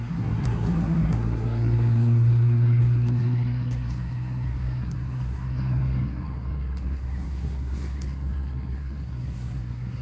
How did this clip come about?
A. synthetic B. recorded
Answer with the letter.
A